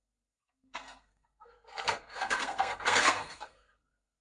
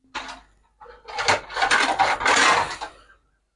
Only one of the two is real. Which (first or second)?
second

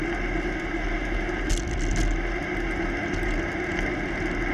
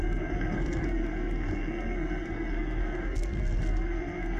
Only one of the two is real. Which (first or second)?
first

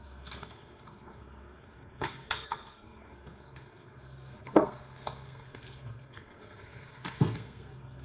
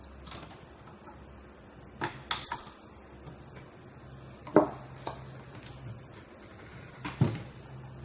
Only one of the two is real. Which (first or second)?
second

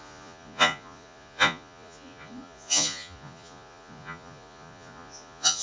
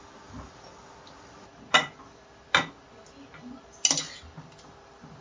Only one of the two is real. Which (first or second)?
second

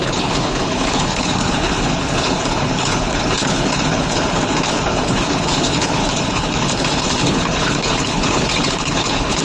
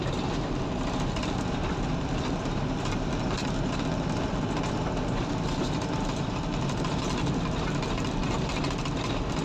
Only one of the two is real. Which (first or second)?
second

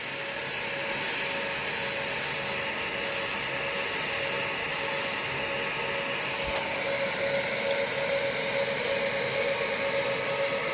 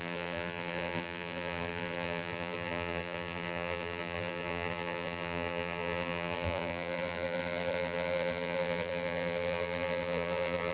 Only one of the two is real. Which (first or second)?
first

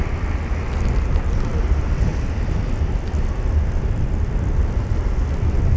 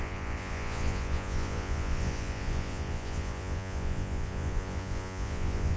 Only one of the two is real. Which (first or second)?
first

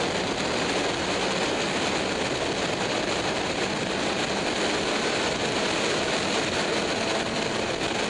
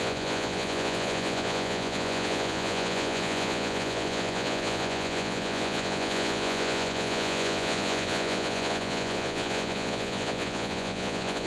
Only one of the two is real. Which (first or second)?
first